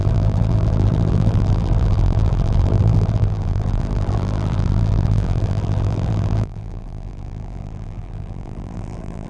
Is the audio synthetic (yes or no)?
yes